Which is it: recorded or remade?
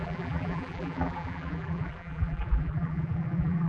remade